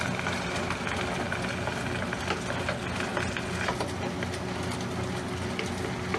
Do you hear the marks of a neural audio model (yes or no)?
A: no